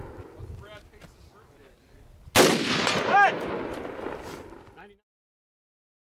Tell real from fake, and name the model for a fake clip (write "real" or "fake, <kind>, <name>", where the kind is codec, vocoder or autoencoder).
real